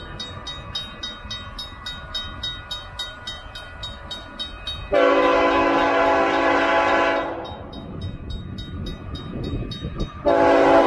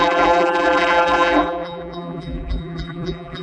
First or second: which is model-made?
second